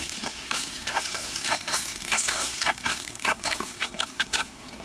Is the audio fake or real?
fake